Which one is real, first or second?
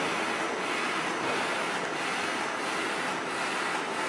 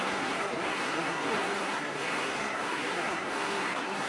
first